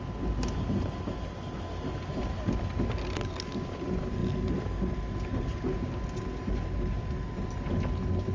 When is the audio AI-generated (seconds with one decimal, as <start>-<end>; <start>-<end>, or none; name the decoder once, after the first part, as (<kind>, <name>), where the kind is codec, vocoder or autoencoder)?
none